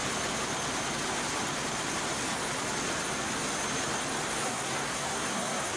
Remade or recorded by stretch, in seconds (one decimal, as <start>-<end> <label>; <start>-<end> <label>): 0.0-4.4 recorded; 4.4-5.8 remade

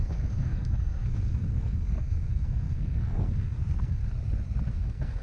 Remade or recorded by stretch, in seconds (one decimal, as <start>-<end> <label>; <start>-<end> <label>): 0.0-4.0 remade; 4.0-4.7 recorded; 4.7-5.2 remade

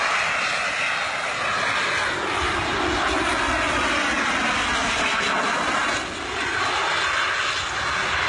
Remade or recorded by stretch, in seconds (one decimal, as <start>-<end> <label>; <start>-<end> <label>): 0.0-8.3 recorded

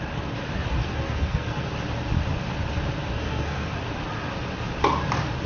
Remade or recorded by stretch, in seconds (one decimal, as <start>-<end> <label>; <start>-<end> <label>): 0.0-0.8 recorded; 0.8-1.7 remade; 1.7-3.2 recorded; 3.2-3.7 remade; 3.7-5.5 recorded

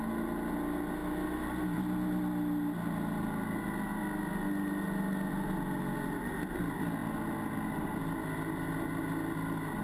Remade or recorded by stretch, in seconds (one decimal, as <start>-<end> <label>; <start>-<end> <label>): 0.0-9.8 recorded